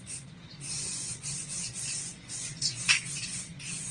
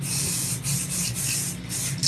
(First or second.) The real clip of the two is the second